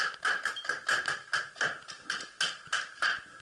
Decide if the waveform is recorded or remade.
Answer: recorded